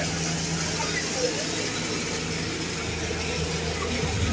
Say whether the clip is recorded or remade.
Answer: recorded